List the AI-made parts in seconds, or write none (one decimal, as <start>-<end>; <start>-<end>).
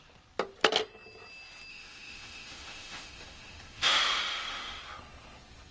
1.7-4.8